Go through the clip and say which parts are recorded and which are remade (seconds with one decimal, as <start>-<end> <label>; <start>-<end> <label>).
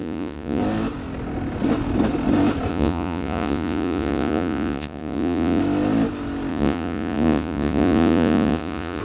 0.0-0.6 remade; 0.6-2.7 recorded; 2.7-5.6 remade; 5.6-6.5 recorded; 6.5-9.0 remade